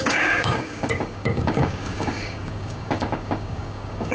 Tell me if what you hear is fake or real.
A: fake